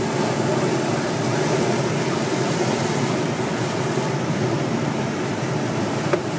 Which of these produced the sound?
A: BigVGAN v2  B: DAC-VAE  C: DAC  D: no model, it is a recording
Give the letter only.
D